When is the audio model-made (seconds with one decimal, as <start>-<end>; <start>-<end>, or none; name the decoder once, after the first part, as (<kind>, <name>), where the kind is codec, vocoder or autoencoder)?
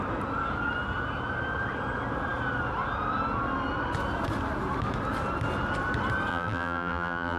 6.3-7.4 (vocoder, BigVGAN v2)